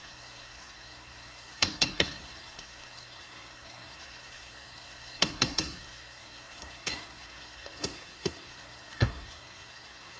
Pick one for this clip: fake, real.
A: fake